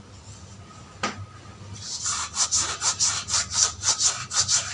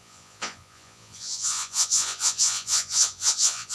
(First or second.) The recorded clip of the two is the first